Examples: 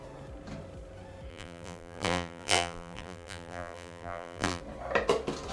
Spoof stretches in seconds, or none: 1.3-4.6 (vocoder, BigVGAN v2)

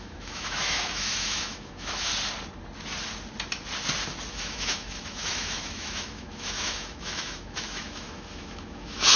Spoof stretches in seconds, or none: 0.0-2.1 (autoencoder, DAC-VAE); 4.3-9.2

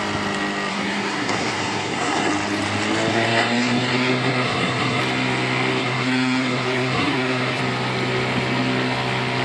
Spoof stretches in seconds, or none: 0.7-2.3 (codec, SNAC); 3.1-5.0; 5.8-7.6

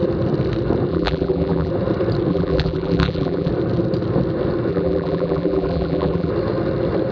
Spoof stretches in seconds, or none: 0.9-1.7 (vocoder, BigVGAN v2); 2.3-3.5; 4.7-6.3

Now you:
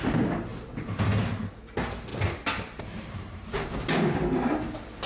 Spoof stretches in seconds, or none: 0.5-1.1 (vocoder, BigVGAN v2); 2.1-3.7

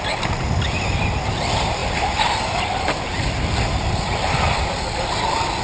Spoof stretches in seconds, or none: none